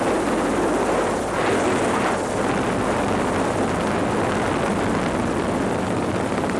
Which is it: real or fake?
real